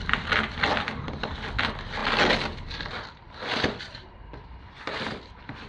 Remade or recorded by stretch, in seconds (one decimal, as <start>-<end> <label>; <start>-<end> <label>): 0.0-5.7 recorded